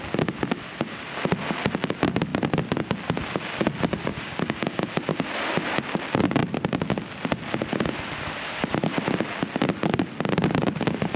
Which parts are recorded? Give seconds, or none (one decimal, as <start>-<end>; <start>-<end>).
0.0-4.1; 4.9-11.2